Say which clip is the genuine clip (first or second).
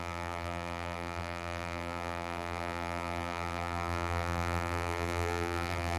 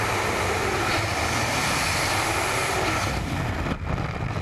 second